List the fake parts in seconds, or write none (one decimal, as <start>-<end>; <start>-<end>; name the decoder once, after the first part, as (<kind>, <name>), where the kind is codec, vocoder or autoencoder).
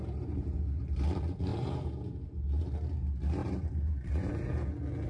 0.0-0.5 (vocoder, BigVGAN v2); 1.5-2.6; 3.4-4.3